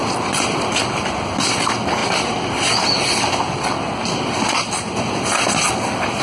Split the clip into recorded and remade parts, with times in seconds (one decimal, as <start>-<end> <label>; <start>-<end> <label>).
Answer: 0.0-2.0 recorded; 2.0-5.7 remade; 5.7-6.2 recorded